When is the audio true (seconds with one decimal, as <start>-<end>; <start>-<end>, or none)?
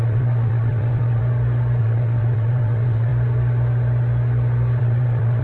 1.2-1.8; 3.1-4.8